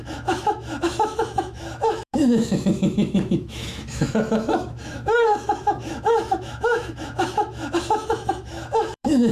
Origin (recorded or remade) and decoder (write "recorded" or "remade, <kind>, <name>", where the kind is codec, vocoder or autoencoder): remade, autoencoder, DAC-VAE